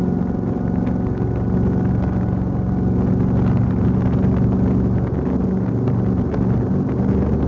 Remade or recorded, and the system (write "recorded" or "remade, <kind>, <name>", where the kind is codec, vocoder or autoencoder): recorded